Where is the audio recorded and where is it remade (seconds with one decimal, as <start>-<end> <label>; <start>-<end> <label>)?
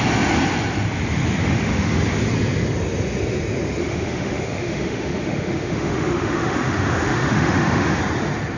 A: 0.0-1.4 recorded; 1.4-2.0 remade; 2.0-3.8 recorded; 3.8-8.0 remade; 8.0-8.6 recorded